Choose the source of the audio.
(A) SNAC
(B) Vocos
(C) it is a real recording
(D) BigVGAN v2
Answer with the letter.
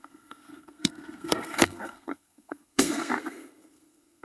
A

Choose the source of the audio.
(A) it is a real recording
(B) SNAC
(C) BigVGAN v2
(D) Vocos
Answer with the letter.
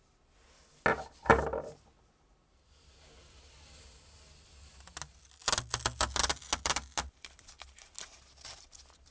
A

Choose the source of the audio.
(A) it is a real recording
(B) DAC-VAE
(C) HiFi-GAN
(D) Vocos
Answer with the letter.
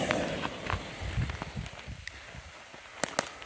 A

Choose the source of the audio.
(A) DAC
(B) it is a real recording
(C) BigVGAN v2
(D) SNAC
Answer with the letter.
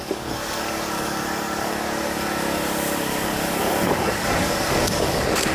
A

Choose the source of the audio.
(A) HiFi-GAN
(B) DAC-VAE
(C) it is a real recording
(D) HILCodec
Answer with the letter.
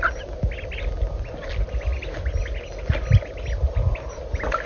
C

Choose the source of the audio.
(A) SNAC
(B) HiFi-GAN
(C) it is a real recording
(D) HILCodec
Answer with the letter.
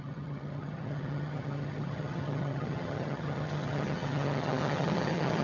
B